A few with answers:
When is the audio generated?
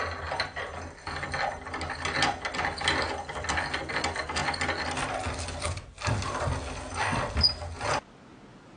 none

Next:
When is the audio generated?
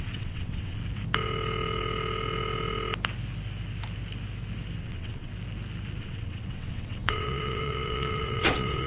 0.0-0.8; 4.8-5.3; 6.0-8.9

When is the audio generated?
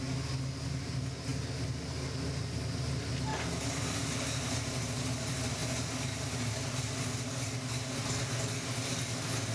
none